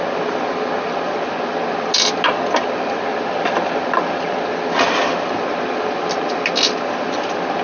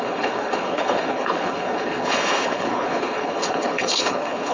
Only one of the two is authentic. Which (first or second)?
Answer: first